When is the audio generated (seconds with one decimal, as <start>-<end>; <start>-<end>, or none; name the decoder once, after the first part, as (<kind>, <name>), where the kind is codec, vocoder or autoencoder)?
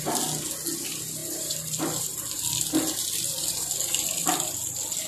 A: 1.2-4.3 (vocoder, BigVGAN v2)